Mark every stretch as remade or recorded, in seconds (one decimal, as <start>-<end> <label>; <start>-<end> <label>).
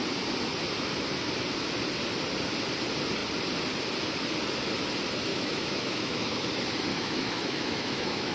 0.0-5.3 recorded; 5.3-6.4 remade; 6.4-6.9 recorded; 6.9-8.3 remade